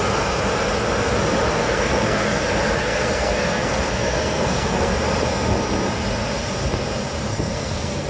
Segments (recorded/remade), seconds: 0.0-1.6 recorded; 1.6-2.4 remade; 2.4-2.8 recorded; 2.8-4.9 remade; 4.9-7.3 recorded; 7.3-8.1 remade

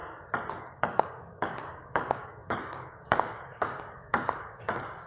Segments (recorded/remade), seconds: 0.0-0.6 recorded; 0.6-5.1 remade

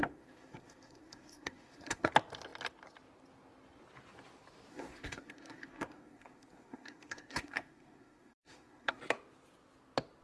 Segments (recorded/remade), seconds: 0.0-2.1 remade; 2.1-4.7 recorded; 4.7-9.0 remade; 9.0-10.2 recorded

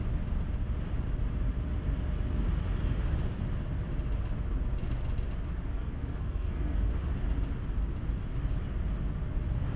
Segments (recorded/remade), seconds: 0.0-5.7 recorded; 5.7-6.9 remade; 6.9-9.8 recorded